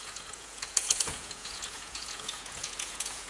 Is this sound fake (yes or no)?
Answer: yes